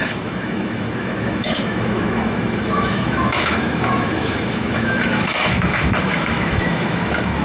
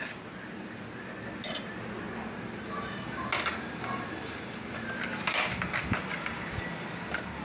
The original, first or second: second